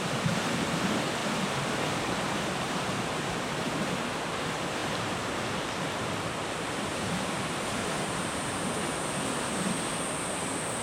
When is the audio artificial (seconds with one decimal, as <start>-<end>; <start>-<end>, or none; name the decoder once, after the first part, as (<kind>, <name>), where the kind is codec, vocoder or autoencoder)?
1.2-3.2 (vocoder, BigVGAN v2); 6.9-9.9